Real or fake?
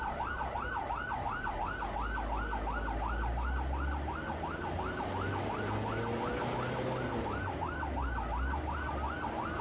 real